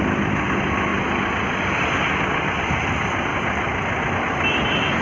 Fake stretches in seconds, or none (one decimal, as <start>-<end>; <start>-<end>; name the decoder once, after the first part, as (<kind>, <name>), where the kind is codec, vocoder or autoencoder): none